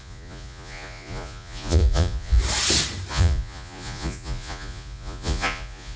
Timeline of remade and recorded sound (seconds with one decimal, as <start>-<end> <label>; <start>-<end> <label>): 0.0-2.4 remade; 2.4-3.1 recorded; 3.1-6.0 remade

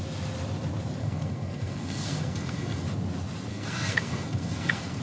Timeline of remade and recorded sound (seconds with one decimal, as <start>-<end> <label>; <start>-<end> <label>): 0.0-1.0 recorded; 1.0-2.9 remade; 2.9-3.5 recorded; 3.5-5.0 remade

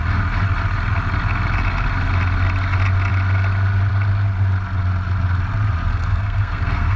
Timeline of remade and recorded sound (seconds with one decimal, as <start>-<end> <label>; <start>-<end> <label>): 0.0-5.9 recorded; 5.9-7.0 remade

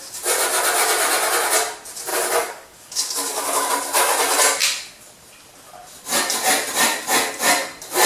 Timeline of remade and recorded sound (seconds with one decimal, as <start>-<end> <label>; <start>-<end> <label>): 0.0-2.1 recorded; 2.1-3.7 remade; 3.7-8.1 recorded